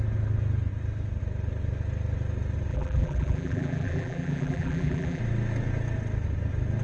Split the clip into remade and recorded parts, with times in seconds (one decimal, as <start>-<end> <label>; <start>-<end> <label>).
0.0-2.7 recorded; 2.7-5.2 remade; 5.2-6.8 recorded